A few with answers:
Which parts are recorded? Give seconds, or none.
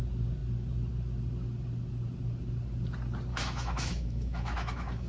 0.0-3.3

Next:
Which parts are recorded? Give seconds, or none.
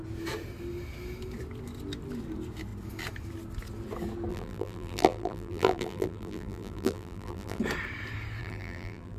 0.0-4.3; 7.6-8.4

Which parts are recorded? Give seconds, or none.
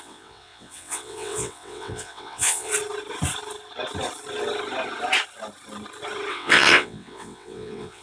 2.7-6.3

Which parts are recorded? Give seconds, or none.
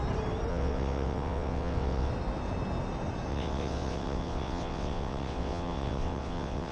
0.0-0.5; 2.1-3.3